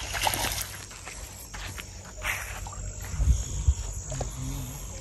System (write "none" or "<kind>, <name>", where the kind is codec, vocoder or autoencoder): none